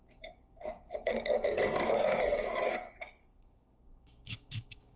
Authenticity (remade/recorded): remade